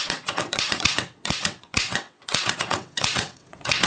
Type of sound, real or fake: fake